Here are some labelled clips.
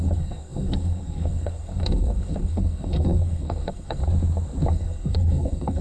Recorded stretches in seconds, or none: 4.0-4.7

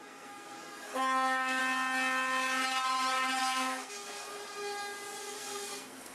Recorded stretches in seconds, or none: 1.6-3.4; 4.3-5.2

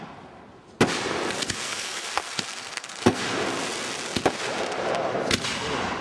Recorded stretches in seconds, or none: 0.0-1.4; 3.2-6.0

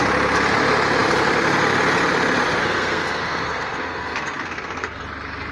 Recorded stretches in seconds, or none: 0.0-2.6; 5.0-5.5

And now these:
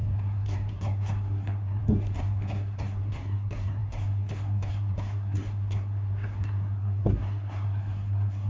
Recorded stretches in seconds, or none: none

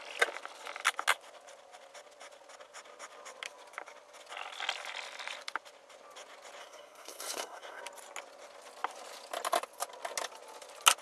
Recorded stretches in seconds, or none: 0.0-6.6; 7.8-11.0